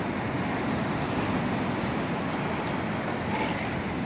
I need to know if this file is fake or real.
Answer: real